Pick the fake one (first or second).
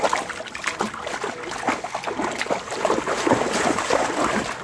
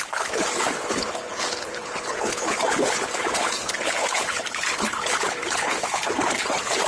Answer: second